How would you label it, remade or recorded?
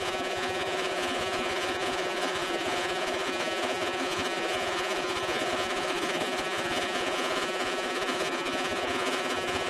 remade